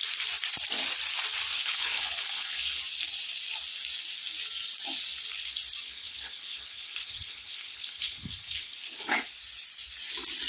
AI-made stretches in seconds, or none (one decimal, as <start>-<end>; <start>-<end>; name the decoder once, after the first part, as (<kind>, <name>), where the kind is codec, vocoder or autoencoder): 1.5-2.8 (codec, HILCodec); 5.8-9.4